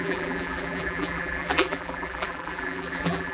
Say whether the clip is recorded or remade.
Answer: remade